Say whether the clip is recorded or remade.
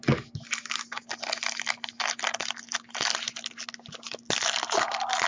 recorded